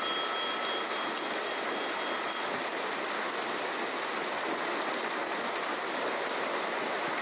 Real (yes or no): yes